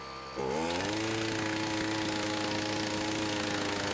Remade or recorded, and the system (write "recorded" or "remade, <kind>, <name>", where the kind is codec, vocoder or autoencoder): recorded